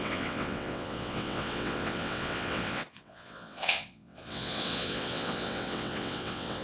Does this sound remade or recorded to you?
remade